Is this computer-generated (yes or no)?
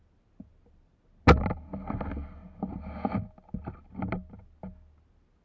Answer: no